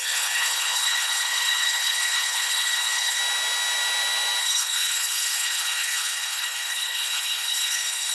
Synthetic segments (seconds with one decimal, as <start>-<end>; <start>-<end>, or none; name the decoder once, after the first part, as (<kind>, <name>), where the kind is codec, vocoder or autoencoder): 0.0-3.2 (codec, HILCodec); 4.4-8.1